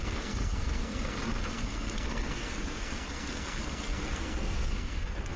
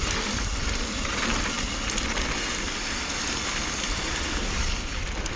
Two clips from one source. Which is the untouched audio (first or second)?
second